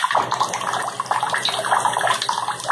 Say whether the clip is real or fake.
real